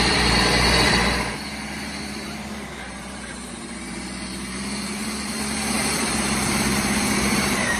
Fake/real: fake